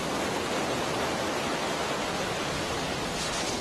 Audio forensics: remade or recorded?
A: recorded